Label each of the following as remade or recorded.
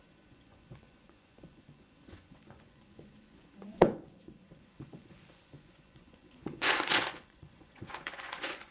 remade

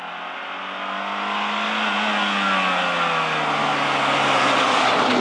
recorded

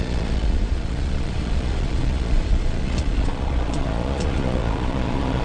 remade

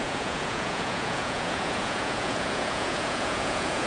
remade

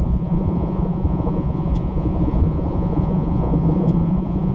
remade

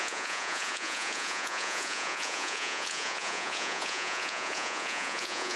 remade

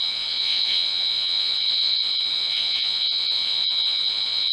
remade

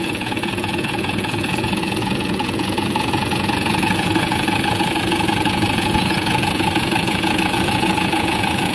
remade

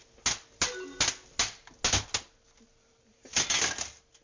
recorded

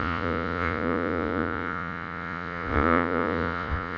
remade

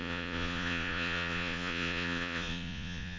remade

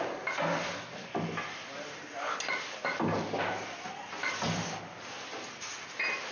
recorded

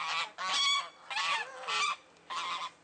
recorded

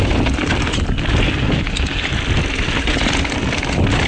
recorded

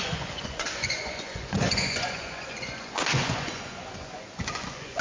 remade